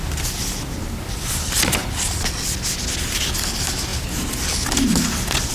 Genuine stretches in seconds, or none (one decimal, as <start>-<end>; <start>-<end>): 0.0-5.5